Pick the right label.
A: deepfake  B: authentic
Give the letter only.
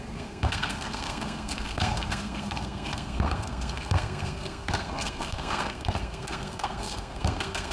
A